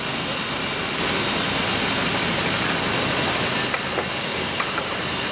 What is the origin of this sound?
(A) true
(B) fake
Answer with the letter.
A